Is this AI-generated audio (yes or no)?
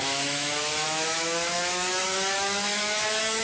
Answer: yes